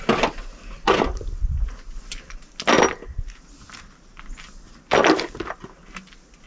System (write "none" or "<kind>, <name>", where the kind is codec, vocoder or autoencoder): none